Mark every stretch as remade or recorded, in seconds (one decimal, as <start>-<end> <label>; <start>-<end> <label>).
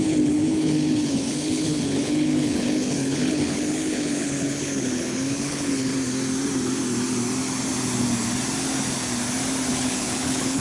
0.0-5.9 remade; 5.9-9.7 recorded; 9.7-10.6 remade